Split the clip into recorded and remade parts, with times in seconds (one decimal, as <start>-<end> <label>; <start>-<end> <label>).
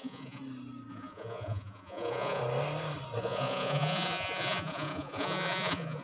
0.0-0.4 remade; 0.4-0.9 recorded; 0.9-2.4 remade; 2.4-3.2 recorded; 3.2-6.0 remade